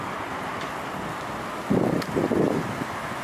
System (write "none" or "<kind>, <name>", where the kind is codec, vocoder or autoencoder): none